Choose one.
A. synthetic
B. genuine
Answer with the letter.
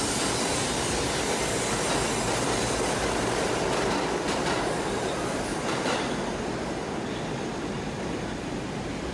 B